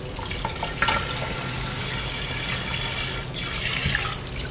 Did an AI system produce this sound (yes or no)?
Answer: no